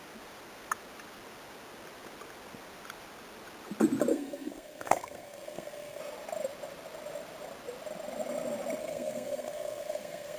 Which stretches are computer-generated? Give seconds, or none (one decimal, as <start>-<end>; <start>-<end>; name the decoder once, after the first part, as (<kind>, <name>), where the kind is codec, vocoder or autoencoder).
4.1-6.0 (codec, SNAC); 8.8-10.4